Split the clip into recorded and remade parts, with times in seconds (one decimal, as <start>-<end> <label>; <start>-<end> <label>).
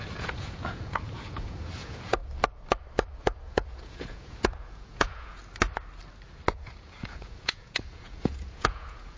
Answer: 0.0-2.2 remade; 2.2-3.2 recorded; 3.2-5.4 remade; 5.4-6.5 recorded; 6.5-9.2 remade